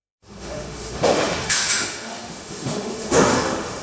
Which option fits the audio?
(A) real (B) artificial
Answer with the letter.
B